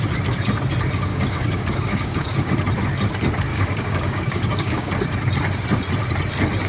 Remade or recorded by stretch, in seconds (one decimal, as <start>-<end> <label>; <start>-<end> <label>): 0.0-1.1 recorded; 1.1-2.5 remade; 2.5-3.5 recorded; 3.5-4.9 remade; 4.9-6.7 recorded